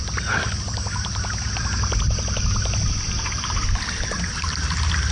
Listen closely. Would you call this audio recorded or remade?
recorded